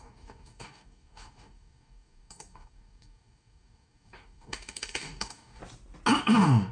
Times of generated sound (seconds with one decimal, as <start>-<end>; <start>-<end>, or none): 0.0-5.6; 6.2-6.7